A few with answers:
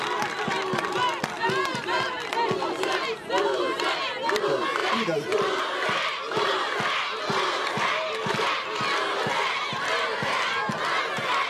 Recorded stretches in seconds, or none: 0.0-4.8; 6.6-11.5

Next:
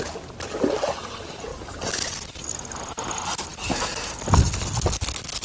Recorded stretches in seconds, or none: 0.0-5.4

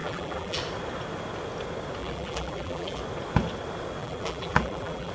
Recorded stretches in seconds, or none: 0.6-2.0; 3.0-4.0

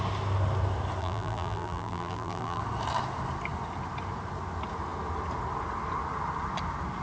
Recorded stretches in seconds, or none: 0.0-1.0; 2.6-7.0

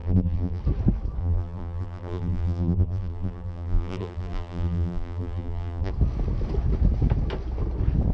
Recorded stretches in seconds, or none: 0.6-1.2; 5.9-8.1

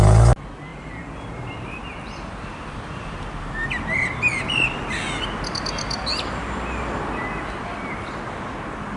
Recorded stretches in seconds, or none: 0.0-0.7; 5.2-9.0

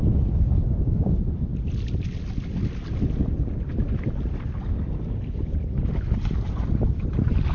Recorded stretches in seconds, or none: 1.5-4.7